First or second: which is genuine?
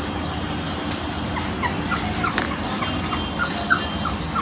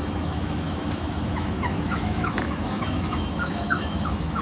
first